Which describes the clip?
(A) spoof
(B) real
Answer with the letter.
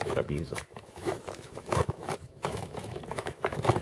A